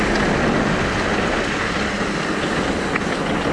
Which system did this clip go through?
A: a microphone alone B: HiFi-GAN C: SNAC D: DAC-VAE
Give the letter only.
A